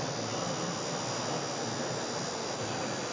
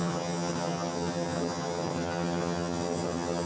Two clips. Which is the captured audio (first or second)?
first